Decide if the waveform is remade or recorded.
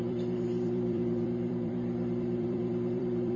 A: remade